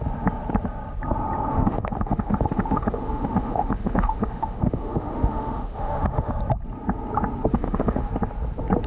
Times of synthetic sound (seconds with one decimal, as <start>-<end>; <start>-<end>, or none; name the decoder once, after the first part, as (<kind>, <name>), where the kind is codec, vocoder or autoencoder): 1.5-6.3 (autoencoder, DAC-VAE); 7.5-8.1

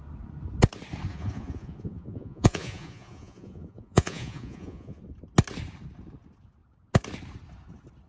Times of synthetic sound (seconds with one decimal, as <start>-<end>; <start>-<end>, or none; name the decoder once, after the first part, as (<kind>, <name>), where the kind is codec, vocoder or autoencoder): 1.1-5.0 (vocoder, Vocos)

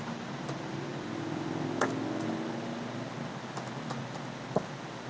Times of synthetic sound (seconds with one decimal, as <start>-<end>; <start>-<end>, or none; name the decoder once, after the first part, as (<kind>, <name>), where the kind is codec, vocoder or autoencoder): none

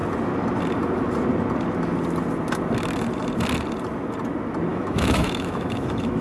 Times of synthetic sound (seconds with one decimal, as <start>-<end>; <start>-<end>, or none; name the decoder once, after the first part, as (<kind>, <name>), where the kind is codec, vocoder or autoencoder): 4.7-6.2 (autoencoder, DAC-VAE)

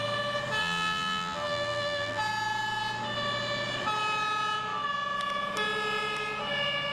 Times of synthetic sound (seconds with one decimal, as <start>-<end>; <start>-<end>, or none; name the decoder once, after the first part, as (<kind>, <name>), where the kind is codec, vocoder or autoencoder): 0.6-2.2 (vocoder, BigVGAN v2)